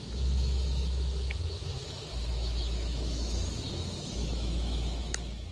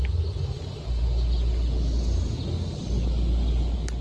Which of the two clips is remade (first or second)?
first